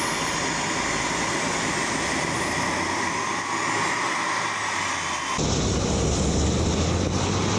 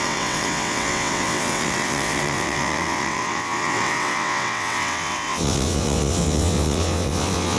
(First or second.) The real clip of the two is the first